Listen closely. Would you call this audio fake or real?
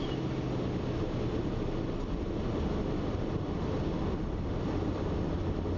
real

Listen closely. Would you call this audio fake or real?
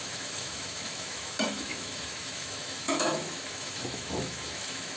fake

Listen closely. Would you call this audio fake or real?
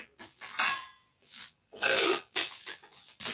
fake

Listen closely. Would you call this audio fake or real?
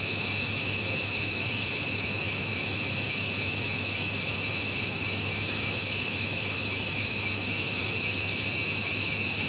fake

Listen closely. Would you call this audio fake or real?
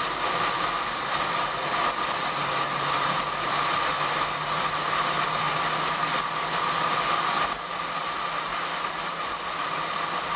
real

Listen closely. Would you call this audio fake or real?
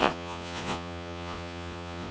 fake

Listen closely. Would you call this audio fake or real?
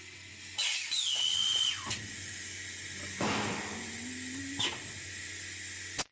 real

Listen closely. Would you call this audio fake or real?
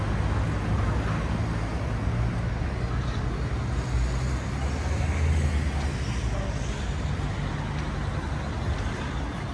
real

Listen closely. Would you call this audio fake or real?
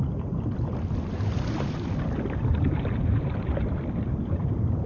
real